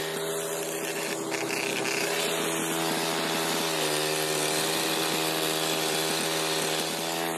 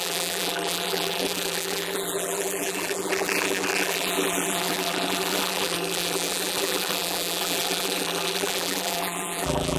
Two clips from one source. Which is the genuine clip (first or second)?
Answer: first